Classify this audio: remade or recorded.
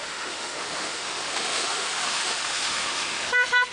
remade